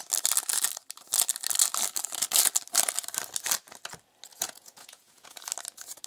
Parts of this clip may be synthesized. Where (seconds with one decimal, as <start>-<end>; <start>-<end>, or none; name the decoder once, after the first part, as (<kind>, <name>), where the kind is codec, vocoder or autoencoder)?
4.3-5.4 (vocoder, Vocos)